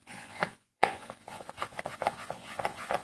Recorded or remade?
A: remade